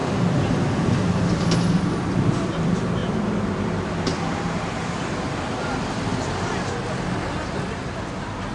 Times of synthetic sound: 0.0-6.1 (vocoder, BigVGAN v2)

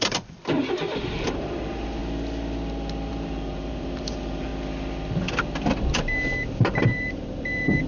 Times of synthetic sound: 0.0-0.4 (vocoder, BigVGAN v2); 1.1-2.0; 3.1-4.5; 6.7-7.9

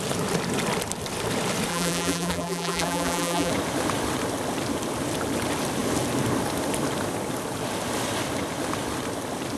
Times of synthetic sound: 1.7-3.5 (vocoder, BigVGAN v2)

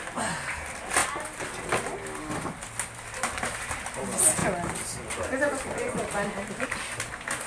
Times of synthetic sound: none

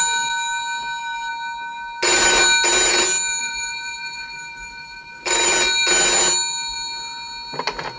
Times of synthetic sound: 3.4-5.4 (vocoder, BigVGAN v2)

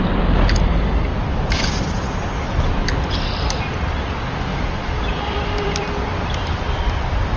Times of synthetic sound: 1.1-3.1 (vocoder, BigVGAN v2); 4.5-6.7

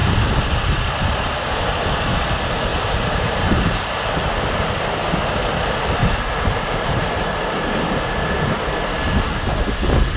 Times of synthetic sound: 2.7-3.8 (vocoder, BigVGAN v2); 6.0-7.2

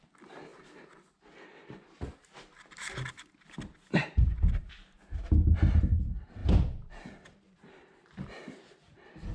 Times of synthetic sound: 6.4-7.7 (vocoder, BigVGAN v2)